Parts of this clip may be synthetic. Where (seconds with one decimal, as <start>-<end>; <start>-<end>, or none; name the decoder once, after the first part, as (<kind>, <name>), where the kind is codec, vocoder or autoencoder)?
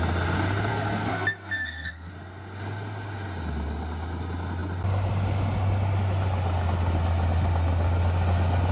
0.7-2.1 (codec, SNAC)